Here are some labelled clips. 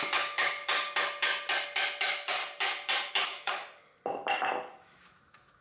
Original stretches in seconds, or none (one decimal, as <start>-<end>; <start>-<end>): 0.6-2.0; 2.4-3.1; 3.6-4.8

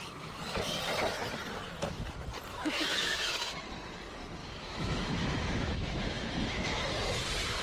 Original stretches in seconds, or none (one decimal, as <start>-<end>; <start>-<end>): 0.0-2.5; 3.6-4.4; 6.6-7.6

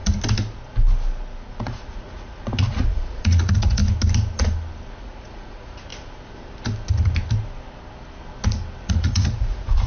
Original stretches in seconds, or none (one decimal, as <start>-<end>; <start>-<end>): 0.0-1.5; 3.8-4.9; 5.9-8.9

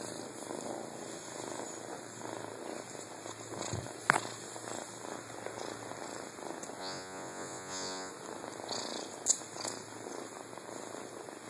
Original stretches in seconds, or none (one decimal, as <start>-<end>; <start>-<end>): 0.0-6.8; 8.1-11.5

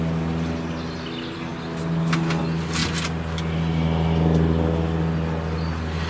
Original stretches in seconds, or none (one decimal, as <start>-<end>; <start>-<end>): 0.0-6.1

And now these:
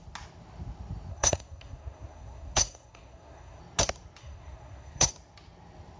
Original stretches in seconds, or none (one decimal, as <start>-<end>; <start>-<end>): 0.0-1.1; 3.6-4.2; 5.1-6.0

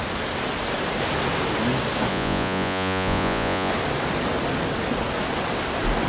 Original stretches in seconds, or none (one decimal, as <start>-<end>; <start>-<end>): 0.0-2.1; 3.7-6.1

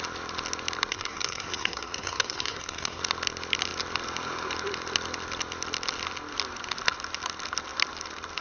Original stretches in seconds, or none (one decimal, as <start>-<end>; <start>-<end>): 0.0-0.9; 3.0-8.4